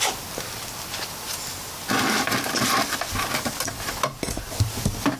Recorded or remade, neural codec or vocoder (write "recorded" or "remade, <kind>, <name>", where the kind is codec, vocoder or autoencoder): recorded